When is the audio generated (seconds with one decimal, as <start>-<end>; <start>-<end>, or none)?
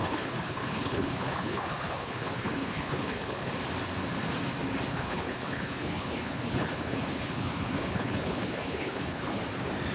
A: 0.0-3.5; 4.9-9.4